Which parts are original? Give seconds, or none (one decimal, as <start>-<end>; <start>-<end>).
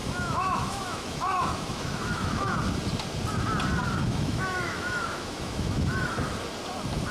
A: 2.6-4.0; 6.1-7.1